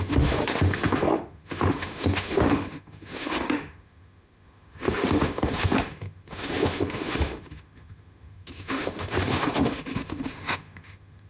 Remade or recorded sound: remade